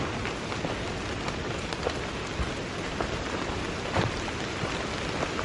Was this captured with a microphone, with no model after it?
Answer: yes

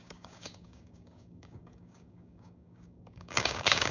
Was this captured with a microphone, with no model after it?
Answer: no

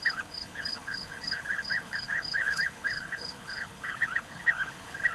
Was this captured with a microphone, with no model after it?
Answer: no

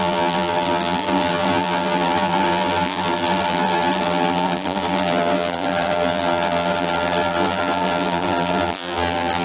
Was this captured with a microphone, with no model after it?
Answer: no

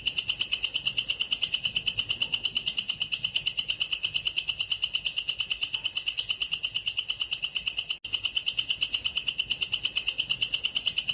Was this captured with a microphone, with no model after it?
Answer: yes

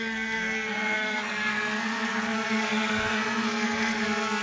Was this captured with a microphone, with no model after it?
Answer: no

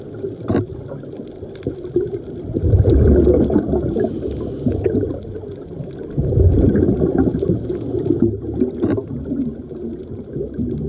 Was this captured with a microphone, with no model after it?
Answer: no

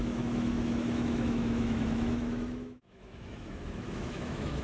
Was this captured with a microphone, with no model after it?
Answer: no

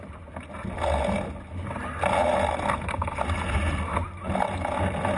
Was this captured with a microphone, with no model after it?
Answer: yes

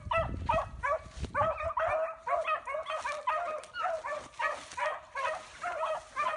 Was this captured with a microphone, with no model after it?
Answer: yes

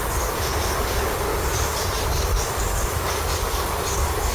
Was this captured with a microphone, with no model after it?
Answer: no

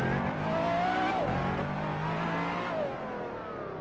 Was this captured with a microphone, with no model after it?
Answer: yes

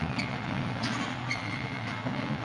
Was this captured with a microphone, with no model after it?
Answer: no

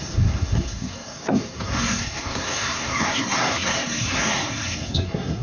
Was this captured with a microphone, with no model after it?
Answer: no